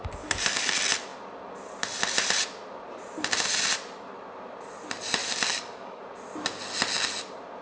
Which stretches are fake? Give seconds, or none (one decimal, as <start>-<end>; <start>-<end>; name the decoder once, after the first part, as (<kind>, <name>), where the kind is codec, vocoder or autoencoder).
0.0-0.7 (codec, DAC); 5.2-6.0